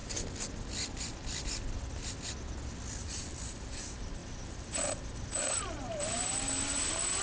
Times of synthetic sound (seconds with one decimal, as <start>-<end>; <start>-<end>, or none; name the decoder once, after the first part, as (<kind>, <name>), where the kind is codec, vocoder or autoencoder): 3.0-7.2 (vocoder, BigVGAN v2)